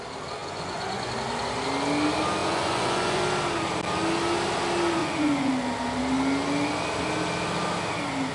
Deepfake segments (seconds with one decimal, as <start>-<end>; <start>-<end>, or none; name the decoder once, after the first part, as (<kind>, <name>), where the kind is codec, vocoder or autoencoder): 0.4-1.1 (vocoder, Vocos); 2.4-3.2; 5.0-5.5